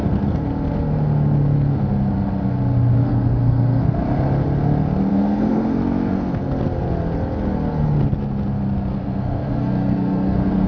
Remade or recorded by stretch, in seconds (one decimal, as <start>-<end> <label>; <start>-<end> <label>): 0.0-0.5 remade; 0.5-3.0 recorded; 3.0-4.0 remade; 4.0-5.1 recorded; 5.1-6.5 remade; 6.5-8.9 recorded; 8.9-10.7 remade